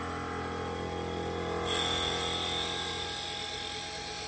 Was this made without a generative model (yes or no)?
yes